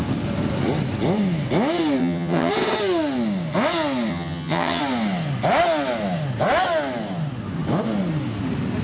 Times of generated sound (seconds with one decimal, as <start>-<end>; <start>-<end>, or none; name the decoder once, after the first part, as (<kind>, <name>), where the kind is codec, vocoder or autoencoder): 2.0-2.5 (vocoder, HiFi-GAN); 4.1-4.8